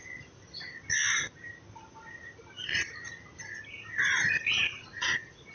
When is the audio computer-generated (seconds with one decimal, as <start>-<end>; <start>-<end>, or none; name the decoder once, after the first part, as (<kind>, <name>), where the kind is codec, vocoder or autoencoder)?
4.6-5.5 (vocoder, Vocos)